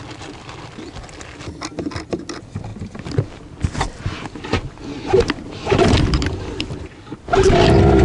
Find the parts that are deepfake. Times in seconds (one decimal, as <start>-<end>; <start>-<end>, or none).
none